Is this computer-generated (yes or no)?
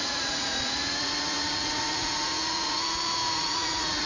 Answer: yes